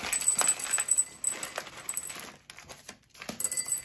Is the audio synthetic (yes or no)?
no